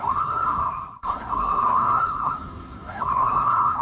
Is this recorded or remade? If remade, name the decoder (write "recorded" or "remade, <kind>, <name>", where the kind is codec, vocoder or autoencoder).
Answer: remade, codec, SNAC